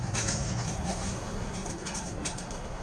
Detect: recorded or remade remade